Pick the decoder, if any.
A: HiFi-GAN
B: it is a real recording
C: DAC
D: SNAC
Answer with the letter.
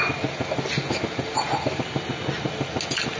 B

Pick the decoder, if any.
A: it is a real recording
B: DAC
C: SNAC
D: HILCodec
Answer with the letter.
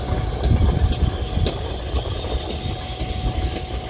A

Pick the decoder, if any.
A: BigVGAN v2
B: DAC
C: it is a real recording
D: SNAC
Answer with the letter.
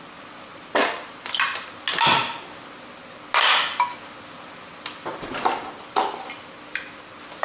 C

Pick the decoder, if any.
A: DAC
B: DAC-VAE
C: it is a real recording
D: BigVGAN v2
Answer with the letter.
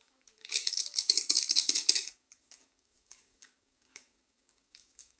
A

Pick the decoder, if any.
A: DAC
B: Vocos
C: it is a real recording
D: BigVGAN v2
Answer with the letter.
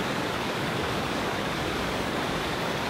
A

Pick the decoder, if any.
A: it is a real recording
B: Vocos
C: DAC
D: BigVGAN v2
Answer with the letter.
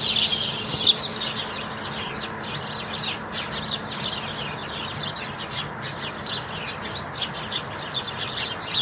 A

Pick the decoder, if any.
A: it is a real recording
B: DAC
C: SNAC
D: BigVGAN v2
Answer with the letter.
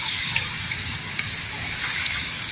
B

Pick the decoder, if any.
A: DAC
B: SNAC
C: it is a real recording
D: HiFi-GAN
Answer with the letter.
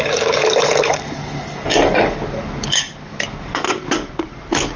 A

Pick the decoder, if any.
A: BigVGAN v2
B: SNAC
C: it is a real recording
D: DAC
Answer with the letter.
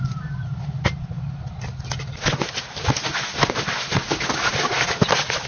C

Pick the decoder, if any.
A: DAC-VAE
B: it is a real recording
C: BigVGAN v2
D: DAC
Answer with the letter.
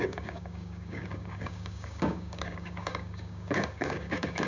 D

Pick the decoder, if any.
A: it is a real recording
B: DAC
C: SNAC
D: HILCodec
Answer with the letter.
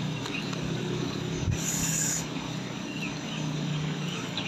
B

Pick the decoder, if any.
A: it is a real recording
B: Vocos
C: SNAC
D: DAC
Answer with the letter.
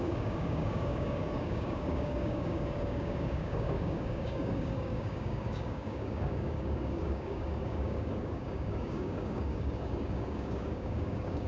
D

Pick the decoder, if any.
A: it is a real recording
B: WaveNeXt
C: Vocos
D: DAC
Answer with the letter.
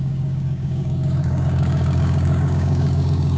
D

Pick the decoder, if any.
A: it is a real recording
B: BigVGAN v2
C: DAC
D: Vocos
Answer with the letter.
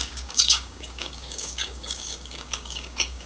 C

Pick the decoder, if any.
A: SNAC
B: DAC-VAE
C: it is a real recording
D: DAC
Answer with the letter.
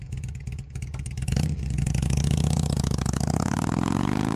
D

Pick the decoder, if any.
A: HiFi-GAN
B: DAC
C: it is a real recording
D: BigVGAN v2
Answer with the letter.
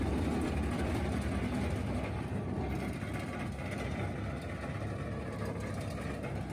C